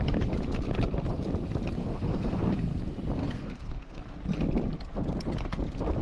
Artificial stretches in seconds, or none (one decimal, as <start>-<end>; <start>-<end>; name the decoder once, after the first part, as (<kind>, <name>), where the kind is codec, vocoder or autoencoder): 1.8-2.8 (codec, SNAC); 3.2-4.0